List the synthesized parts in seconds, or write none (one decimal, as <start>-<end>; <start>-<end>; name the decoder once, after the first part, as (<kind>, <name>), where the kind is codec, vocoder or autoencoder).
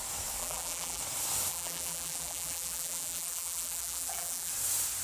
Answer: 0.4-1.0 (vocoder, BigVGAN v2); 1.5-4.5